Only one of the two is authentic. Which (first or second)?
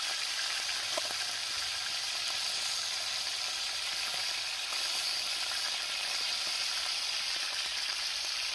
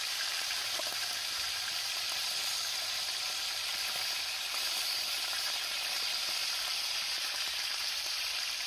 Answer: first